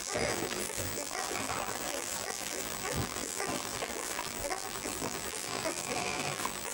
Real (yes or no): no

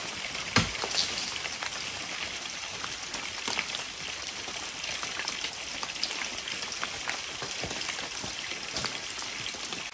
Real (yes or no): yes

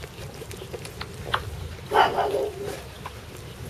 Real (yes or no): yes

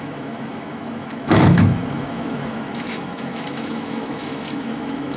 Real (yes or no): no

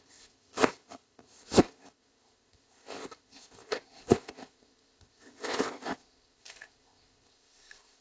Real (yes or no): no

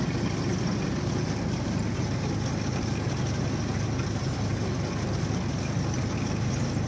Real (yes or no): yes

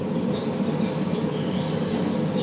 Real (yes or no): yes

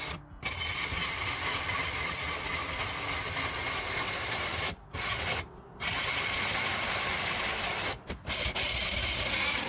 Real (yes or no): yes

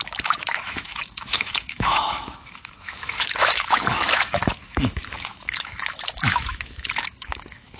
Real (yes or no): no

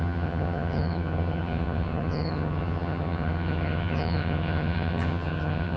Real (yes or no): no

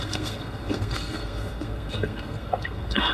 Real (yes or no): no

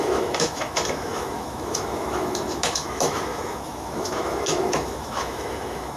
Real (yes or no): no